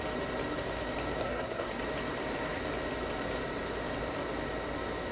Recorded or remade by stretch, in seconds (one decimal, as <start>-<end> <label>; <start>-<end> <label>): 0.0-1.2 recorded; 1.2-1.8 remade; 1.8-5.1 recorded